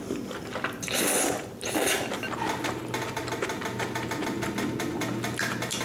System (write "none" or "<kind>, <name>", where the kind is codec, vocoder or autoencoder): none